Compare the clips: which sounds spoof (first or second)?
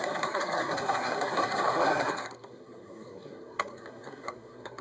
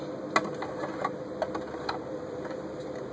first